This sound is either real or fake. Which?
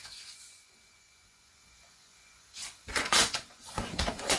fake